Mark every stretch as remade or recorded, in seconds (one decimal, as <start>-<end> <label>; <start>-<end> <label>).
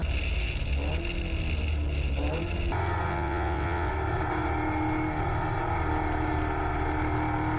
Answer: 0.0-3.1 recorded; 3.1-3.9 remade; 3.9-7.6 recorded